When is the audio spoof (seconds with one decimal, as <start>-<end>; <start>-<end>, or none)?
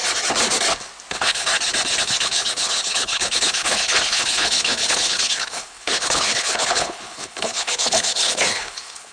1.1-1.5; 2.0-9.1